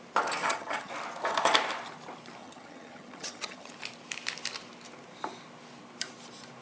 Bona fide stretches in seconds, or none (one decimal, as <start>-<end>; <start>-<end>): 0.0-0.4; 0.9-2.4; 3.7-6.6